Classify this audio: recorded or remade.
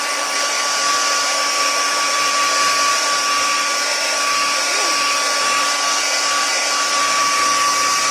recorded